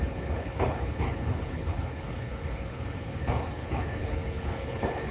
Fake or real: fake